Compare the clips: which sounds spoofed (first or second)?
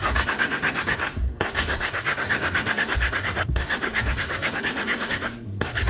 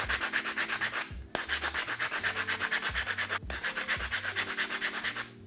first